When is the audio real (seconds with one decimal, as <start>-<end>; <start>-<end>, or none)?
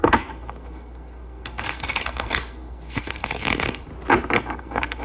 3.9-4.6